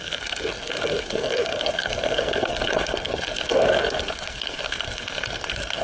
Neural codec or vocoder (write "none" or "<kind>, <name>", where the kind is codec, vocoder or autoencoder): codec, SNAC